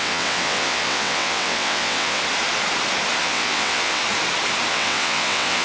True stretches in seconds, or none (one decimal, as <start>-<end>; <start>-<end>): 2.2-3.2; 4.0-4.7